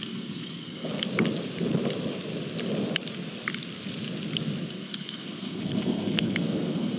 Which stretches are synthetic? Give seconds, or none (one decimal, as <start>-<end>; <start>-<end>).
0.0-0.9; 4.6-7.0